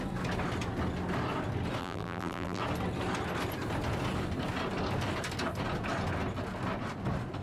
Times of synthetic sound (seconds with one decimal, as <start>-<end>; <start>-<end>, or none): 1.8-2.6